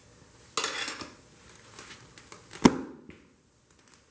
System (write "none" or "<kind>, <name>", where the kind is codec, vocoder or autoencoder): none